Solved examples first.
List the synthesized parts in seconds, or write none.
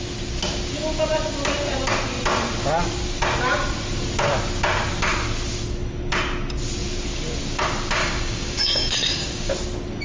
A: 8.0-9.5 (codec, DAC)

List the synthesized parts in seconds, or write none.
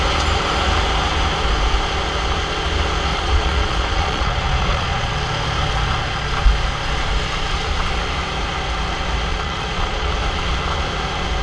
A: 3.1-5.1 (vocoder, Vocos); 9.3-10.1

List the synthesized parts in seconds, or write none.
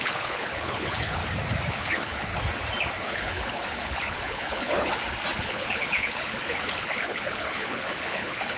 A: 0.0-1.2 (codec, HILCodec); 1.7-2.3; 3.0-4.9; 5.4-8.6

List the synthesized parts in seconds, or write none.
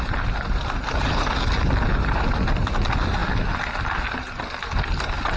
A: none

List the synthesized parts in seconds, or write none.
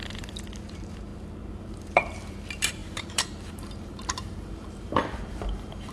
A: 0.7-1.1 (vocoder, BigVGAN v2); 1.6-5.9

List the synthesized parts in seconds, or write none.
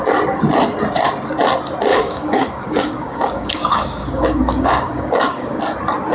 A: 1.9-5.6 (codec, DAC)